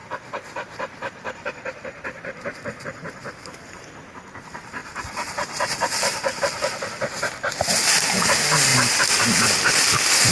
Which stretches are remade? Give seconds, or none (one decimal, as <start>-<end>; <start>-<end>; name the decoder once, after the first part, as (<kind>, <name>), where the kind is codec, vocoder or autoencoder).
0.0-3.9 (vocoder, BigVGAN v2); 4.8-6.4